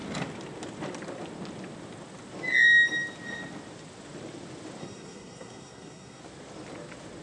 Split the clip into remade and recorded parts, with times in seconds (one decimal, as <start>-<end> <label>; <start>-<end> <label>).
0.0-4.8 recorded; 4.8-6.2 remade; 6.2-7.2 recorded